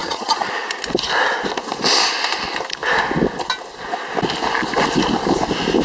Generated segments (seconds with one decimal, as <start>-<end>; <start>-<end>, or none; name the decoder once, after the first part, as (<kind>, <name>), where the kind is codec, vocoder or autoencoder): 0.0-0.5 (vocoder, HiFi-GAN)